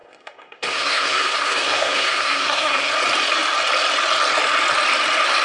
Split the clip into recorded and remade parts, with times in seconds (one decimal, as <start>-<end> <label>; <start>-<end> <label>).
0.0-2.9 remade; 2.9-5.4 recorded